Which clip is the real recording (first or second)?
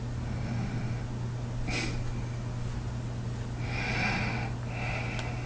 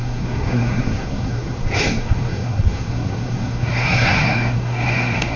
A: first